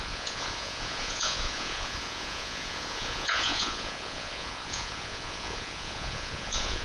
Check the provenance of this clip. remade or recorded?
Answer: remade